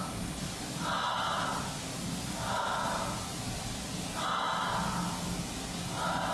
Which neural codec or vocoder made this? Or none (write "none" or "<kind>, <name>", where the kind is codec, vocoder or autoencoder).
none